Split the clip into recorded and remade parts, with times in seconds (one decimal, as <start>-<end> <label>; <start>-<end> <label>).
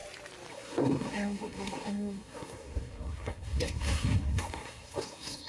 0.0-0.5 recorded; 0.5-5.5 remade